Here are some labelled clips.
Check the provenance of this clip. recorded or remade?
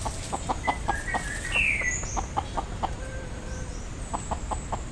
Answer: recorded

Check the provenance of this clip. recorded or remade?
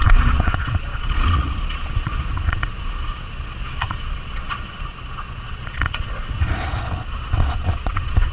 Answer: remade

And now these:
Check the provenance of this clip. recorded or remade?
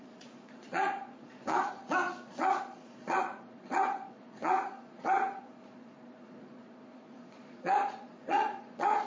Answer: remade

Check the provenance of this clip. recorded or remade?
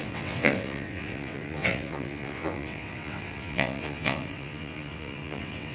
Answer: remade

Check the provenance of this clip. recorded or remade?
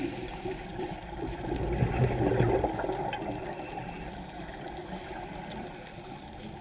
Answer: recorded